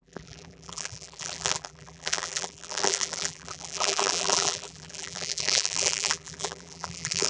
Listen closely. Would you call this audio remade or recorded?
remade